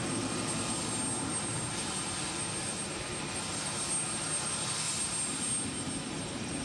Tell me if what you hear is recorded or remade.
recorded